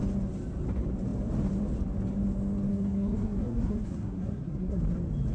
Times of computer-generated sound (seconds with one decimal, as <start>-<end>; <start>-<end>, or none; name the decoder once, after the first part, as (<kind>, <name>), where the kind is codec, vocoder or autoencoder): 2.7-4.8 (codec, SNAC)